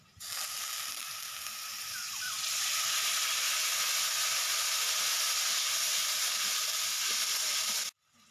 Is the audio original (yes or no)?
yes